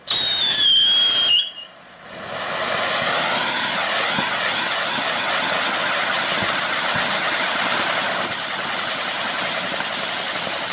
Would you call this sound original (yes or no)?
yes